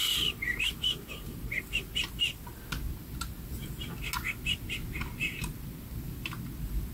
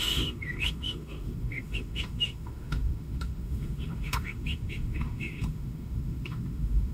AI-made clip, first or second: second